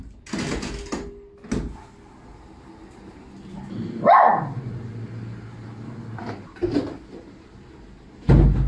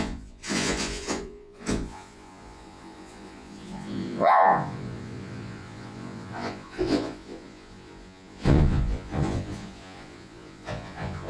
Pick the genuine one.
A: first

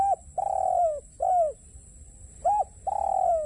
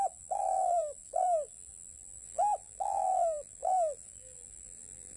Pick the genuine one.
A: first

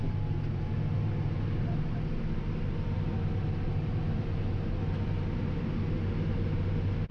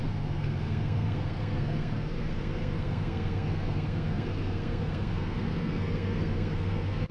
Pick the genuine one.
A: first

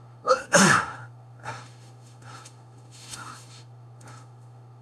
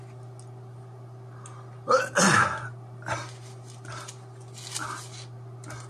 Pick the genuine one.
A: second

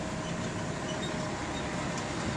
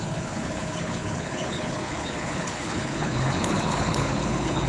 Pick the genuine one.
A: first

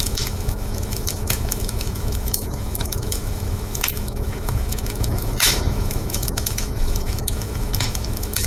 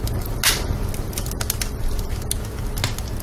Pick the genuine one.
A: second